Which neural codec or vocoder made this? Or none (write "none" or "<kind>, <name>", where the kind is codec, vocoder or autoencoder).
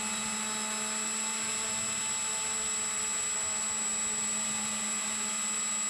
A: none